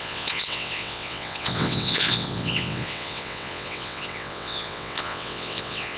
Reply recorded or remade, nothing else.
remade